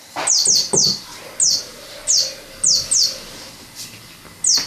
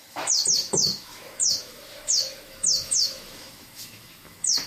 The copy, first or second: second